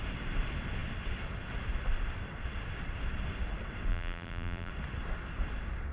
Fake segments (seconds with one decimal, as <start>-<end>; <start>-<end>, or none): 3.9-4.7